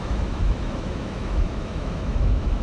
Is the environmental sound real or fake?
fake